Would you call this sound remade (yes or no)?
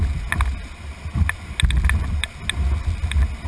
no